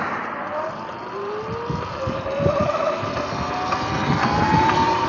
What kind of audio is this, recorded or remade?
recorded